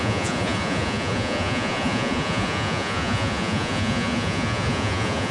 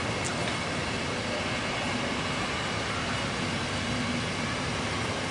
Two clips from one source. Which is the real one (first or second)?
second